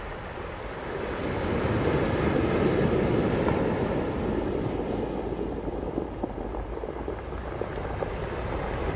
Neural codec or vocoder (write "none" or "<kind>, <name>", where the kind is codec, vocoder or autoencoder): none